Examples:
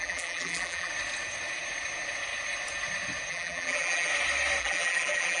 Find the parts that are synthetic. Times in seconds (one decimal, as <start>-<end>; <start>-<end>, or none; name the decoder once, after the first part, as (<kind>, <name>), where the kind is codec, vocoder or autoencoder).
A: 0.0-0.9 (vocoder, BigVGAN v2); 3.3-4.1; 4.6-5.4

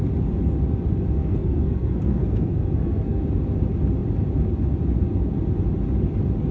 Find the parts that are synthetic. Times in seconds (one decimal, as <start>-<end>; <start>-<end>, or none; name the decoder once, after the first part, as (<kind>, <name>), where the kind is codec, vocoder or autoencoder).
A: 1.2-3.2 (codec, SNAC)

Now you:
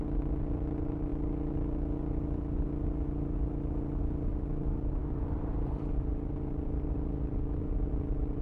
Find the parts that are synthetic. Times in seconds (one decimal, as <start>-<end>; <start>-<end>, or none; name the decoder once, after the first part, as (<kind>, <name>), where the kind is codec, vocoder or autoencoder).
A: none